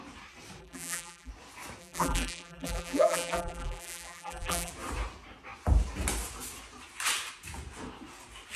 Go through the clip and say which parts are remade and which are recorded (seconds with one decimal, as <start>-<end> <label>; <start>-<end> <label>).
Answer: 0.0-0.6 recorded; 0.6-1.3 remade; 1.3-1.8 recorded; 1.8-4.7 remade; 4.7-8.6 recorded